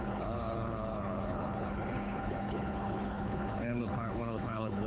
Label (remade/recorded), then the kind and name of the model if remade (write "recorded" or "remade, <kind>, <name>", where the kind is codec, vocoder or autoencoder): remade, codec, HILCodec